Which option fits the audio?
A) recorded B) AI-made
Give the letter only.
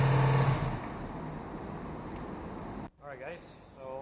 A